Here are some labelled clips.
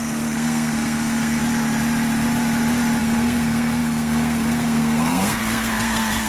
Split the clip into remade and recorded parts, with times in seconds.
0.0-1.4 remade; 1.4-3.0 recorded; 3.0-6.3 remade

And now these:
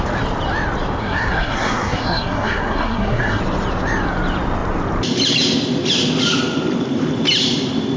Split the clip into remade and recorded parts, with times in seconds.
0.0-1.0 recorded; 1.0-3.4 remade; 3.4-8.0 recorded

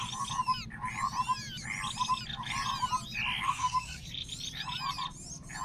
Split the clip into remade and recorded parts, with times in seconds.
0.0-3.5 recorded; 3.5-4.1 remade; 4.1-5.6 recorded

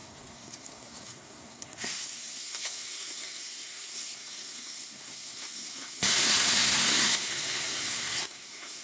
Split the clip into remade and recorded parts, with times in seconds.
0.0-8.8 remade

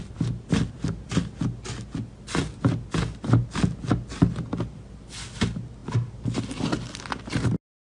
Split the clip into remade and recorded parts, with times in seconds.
0.0-7.8 recorded

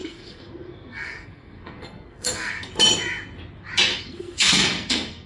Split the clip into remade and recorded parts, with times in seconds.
0.0-2.7 remade; 2.7-3.9 recorded; 3.9-5.3 remade